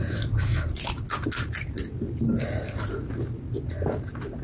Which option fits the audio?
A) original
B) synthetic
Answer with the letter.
A